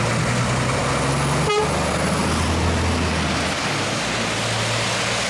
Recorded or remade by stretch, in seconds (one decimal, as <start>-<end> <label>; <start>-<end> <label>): 0.0-5.3 recorded